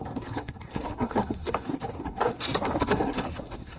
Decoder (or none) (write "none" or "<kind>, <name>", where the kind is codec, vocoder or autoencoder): codec, SNAC